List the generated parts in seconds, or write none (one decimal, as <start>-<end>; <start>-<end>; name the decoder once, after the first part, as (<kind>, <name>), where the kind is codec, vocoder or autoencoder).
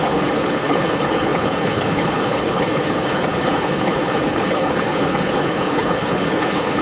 0.0-6.8 (codec, HILCodec)